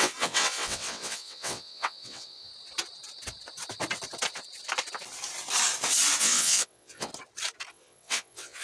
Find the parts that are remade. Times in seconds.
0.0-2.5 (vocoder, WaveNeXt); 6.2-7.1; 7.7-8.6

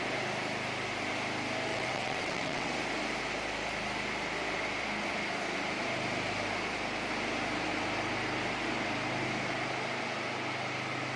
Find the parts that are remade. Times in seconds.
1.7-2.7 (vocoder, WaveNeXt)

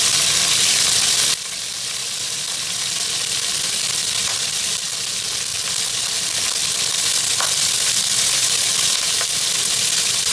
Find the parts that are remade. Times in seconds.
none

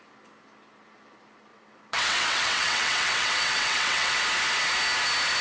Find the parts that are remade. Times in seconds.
1.5-4.2 (vocoder, WaveNeXt)

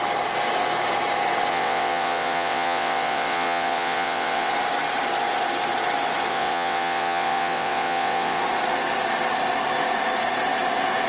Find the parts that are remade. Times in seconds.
1.5-4.5 (vocoder, WaveNeXt); 6.3-8.4

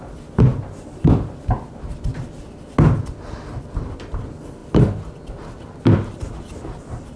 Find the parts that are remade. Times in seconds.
none